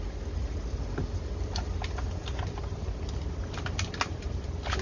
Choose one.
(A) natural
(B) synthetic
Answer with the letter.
A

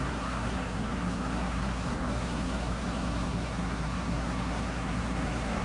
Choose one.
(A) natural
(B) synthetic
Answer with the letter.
B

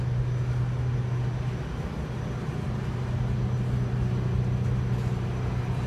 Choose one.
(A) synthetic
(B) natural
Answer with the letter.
B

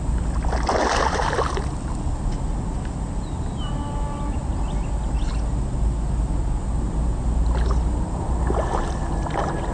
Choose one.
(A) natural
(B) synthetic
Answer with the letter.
A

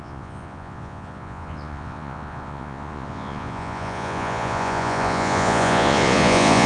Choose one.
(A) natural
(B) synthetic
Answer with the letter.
B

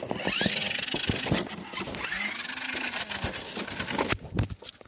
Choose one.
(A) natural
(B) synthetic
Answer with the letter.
A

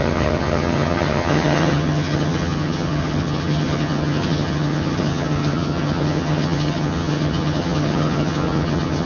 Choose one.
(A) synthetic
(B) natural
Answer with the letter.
A